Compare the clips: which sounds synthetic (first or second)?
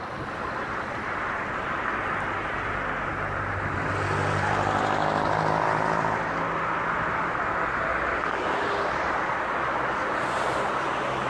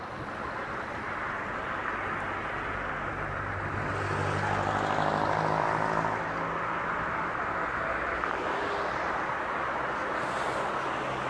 first